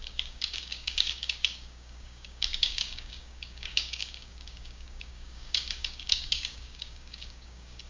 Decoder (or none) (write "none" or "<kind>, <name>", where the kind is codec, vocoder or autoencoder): codec, DAC